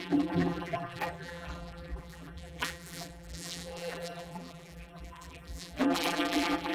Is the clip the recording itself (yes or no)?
no